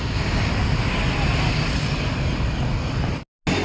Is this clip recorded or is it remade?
recorded